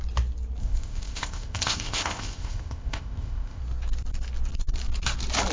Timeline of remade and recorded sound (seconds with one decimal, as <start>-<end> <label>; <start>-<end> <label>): 0.0-0.6 recorded; 0.6-3.6 remade; 3.6-5.5 recorded